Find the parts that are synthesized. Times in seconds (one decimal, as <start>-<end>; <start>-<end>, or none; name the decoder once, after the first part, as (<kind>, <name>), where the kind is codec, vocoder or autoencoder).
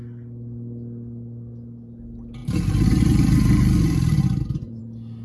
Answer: 2.4-4.8 (vocoder, BigVGAN v2)